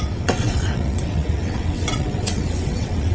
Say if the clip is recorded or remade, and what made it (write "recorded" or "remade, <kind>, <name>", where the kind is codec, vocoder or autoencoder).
remade, vocoder, WaveNeXt